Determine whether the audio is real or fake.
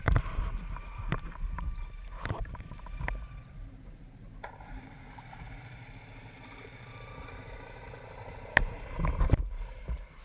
fake